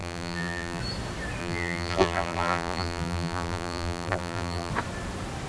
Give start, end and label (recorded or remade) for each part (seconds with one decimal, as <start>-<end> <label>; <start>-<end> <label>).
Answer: 0.0-0.8 remade; 0.8-1.4 recorded; 1.4-4.7 remade; 4.7-5.5 recorded

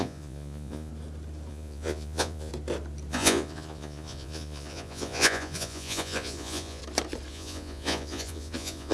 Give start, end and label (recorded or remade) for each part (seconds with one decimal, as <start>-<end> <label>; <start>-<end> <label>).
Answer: 0.0-0.9 remade; 0.9-1.5 recorded; 1.5-2.5 remade; 2.5-3.1 recorded; 3.1-6.8 remade; 6.8-7.3 recorded; 7.3-8.9 remade

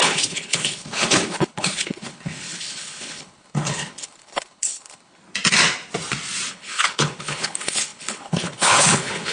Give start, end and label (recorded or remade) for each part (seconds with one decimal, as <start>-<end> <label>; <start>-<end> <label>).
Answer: 0.0-5.2 remade; 5.2-6.5 recorded; 6.5-9.3 remade

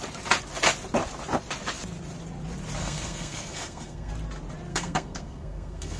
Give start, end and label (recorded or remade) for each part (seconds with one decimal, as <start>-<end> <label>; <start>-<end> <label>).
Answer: 0.0-2.8 recorded; 2.8-4.1 remade; 4.1-4.7 recorded; 4.7-6.0 remade

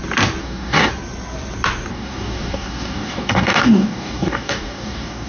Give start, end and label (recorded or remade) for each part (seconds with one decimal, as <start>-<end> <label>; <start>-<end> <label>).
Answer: 0.0-0.4 recorded; 0.4-0.9 remade; 0.9-1.9 recorded; 1.9-5.3 remade

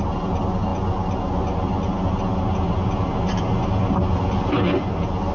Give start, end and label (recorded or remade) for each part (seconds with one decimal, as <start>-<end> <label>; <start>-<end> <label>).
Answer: 0.0-5.3 recorded

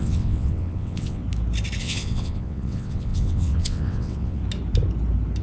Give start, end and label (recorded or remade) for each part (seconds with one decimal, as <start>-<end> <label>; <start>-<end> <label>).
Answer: 0.0-1.2 remade; 1.2-1.8 recorded; 1.8-4.4 remade; 4.4-5.4 recorded